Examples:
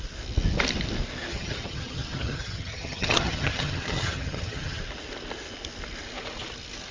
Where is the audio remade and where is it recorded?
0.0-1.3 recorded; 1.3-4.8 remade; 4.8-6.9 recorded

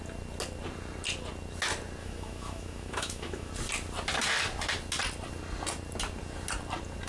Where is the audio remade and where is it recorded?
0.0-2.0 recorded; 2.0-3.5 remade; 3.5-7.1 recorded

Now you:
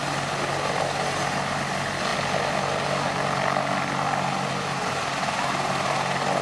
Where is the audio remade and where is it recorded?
0.0-6.4 recorded

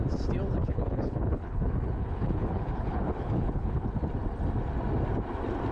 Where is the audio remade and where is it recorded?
0.0-0.6 recorded; 0.6-4.0 remade; 4.0-5.7 recorded

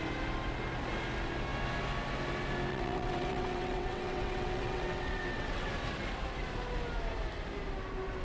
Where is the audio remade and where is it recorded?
0.0-2.7 recorded; 2.7-5.7 remade; 5.7-8.2 recorded

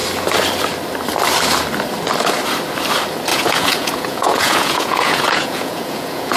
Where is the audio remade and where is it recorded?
0.0-3.3 recorded; 3.3-6.4 remade